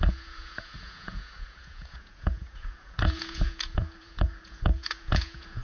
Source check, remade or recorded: remade